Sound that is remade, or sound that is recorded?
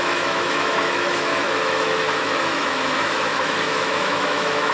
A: remade